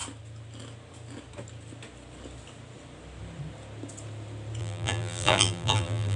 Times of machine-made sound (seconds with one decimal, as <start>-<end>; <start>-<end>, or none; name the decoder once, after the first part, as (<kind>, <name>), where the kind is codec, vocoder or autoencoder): 4.6-6.2 (vocoder, BigVGAN v2)